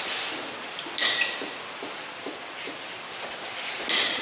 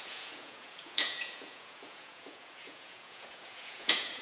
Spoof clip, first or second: second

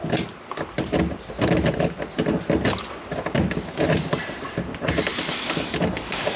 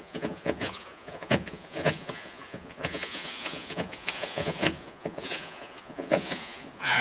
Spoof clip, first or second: second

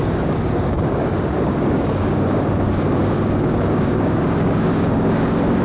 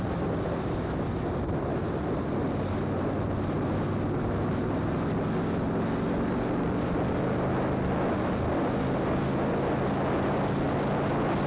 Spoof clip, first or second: first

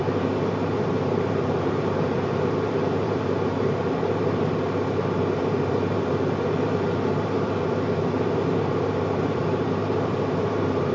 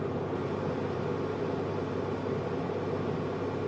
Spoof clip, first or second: first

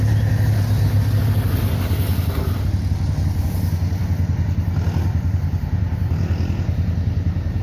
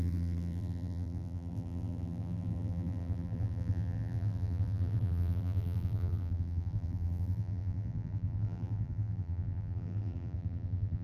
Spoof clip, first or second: second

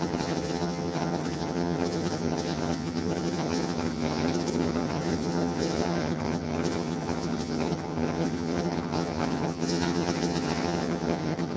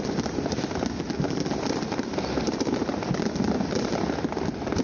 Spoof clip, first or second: first